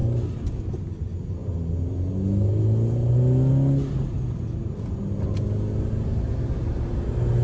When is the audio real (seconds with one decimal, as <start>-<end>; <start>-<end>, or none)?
0.0-7.4